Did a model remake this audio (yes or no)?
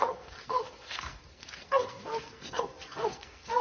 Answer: yes